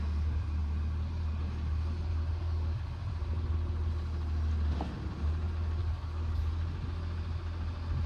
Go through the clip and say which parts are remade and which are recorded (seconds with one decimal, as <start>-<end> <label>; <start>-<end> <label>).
0.0-2.4 recorded; 2.4-3.0 remade; 3.0-5.8 recorded; 5.8-6.4 remade; 6.4-8.1 recorded